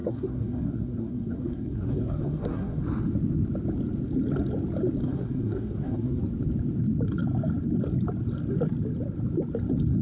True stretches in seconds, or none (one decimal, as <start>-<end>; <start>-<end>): 2.8-5.0; 6.2-10.0